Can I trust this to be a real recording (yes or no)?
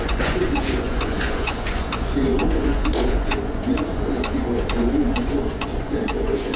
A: no